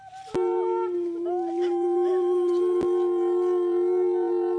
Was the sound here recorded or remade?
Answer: recorded